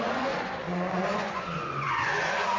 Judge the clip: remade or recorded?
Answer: remade